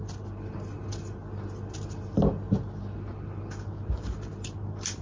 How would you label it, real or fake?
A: real